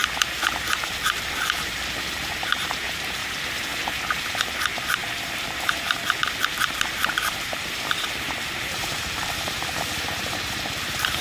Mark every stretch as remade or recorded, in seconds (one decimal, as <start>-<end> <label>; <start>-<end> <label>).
0.0-0.7 recorded; 0.7-3.2 remade; 3.2-4.4 recorded; 4.4-11.2 remade